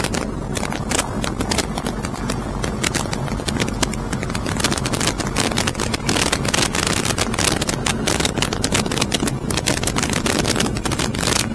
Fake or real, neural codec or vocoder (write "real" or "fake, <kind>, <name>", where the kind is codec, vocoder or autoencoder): real